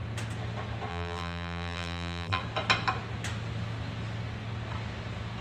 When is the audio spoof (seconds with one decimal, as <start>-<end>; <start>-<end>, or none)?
0.9-2.4